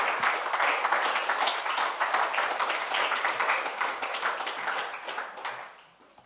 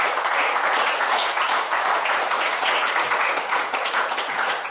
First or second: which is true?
first